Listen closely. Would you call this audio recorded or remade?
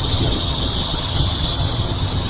remade